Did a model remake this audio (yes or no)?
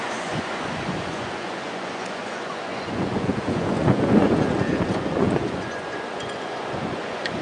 yes